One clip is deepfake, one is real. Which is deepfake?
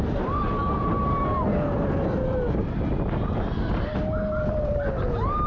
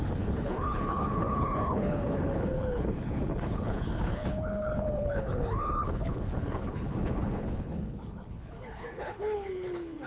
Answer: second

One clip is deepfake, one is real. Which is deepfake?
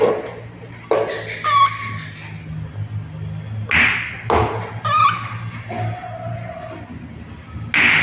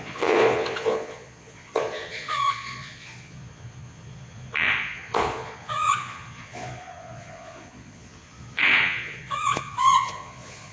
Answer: second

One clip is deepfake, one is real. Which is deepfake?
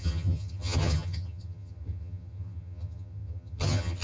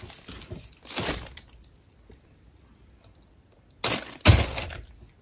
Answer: first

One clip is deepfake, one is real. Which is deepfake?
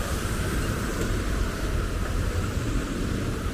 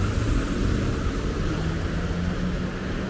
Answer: first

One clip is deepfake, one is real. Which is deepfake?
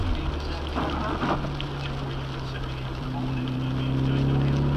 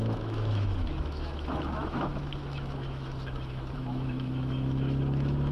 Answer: second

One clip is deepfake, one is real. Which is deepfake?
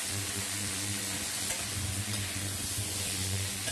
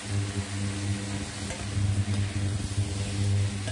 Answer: first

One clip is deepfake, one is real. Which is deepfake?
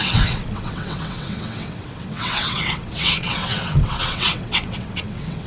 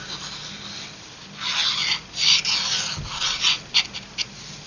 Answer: first